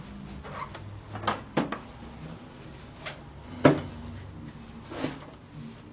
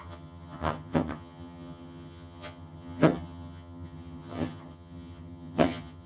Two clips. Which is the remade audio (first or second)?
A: second